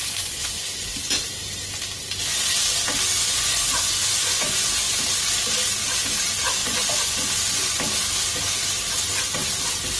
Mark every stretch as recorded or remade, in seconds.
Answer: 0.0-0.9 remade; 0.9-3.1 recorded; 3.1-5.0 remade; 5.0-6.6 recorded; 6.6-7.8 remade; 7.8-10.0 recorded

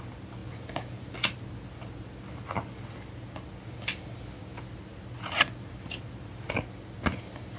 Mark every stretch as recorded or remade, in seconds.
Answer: 0.0-7.6 recorded

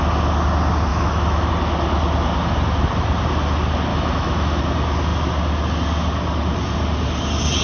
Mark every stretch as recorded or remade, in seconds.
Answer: 0.0-0.9 recorded; 0.9-1.5 remade; 1.5-3.9 recorded; 3.9-4.6 remade; 4.6-7.6 recorded

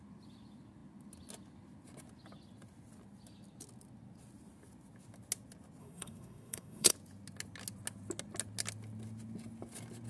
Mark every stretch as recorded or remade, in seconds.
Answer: 0.0-5.8 recorded; 5.8-6.9 remade; 6.9-10.1 recorded

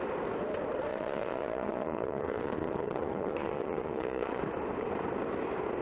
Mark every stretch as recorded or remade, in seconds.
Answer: 0.0-0.9 recorded; 0.9-4.4 remade; 4.4-5.8 recorded

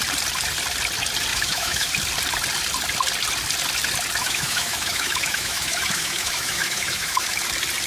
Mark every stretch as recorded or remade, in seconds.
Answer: 0.0-1.3 recorded; 1.3-1.9 remade; 1.9-4.2 recorded; 4.2-7.4 remade; 7.4-7.9 recorded

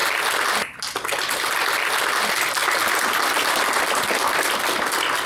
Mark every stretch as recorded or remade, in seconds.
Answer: 0.0-5.3 recorded